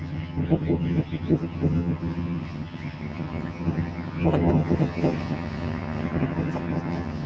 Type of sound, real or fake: fake